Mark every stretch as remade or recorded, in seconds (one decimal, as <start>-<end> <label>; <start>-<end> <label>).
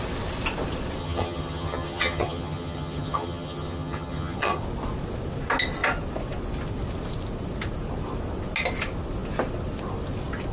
0.0-1.0 recorded; 1.0-4.6 remade; 4.6-10.5 recorded